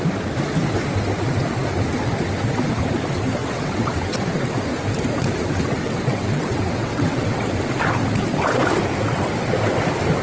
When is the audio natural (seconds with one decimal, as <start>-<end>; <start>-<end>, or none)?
0.0-3.4; 4.2-5.4; 7.5-10.2